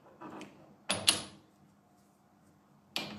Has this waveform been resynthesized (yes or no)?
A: no